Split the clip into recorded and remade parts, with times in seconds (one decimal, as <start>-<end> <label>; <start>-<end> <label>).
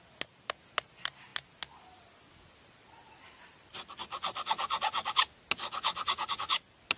0.0-7.0 recorded